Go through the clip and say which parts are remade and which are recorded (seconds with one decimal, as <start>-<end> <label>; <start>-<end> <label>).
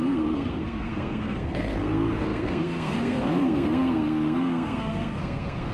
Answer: 0.0-5.7 remade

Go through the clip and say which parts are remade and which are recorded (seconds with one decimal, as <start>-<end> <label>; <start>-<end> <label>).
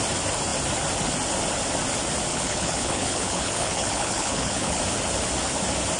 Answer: 0.0-2.3 recorded; 2.3-4.8 remade; 4.8-6.0 recorded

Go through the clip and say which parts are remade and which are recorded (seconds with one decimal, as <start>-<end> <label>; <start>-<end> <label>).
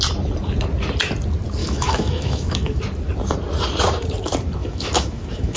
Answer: 0.0-1.6 recorded; 1.6-2.8 remade; 2.8-4.6 recorded; 4.6-5.6 remade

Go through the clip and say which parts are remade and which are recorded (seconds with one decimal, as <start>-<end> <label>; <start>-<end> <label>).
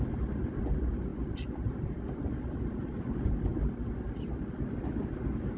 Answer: 0.0-5.6 recorded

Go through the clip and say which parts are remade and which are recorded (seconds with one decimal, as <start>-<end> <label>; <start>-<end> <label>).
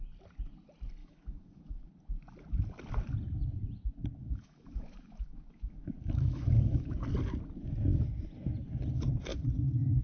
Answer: 0.0-1.0 recorded; 1.0-1.9 remade; 1.9-4.2 recorded; 4.2-7.0 remade; 7.0-10.0 recorded